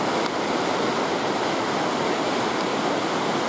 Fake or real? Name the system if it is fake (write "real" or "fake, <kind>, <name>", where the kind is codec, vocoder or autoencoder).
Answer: real